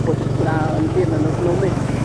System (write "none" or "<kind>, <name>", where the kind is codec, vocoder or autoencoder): autoencoder, DAC-VAE